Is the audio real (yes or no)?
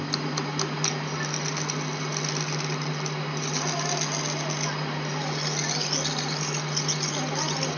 yes